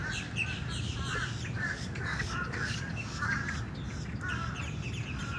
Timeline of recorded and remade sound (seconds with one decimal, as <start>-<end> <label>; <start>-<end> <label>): 0.0-1.5 recorded; 1.5-3.4 remade; 3.4-5.4 recorded